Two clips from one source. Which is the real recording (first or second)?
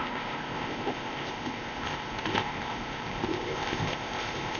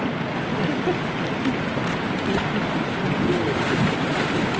second